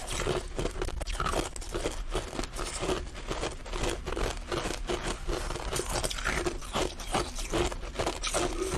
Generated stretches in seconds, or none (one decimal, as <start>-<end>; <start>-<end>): none